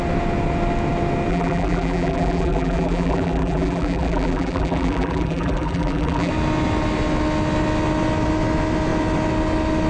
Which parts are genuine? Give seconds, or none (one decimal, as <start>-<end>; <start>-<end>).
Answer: 0.0-1.3; 6.3-9.9